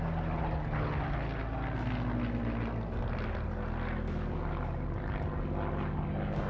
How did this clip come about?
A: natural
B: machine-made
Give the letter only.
A